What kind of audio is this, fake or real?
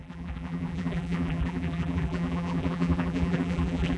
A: fake